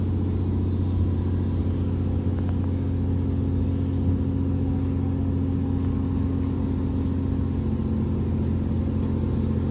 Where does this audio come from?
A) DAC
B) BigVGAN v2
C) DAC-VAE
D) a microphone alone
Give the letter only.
D